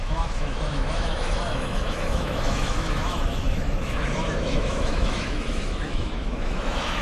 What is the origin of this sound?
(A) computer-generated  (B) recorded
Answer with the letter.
A